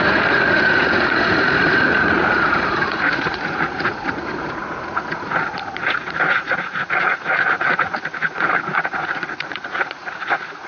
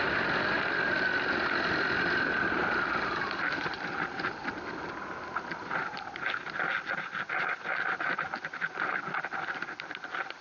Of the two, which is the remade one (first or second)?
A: first